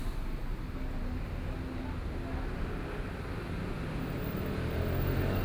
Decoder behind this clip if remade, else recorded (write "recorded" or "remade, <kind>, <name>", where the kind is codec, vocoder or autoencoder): recorded